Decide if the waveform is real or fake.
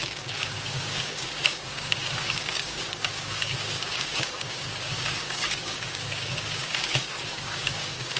fake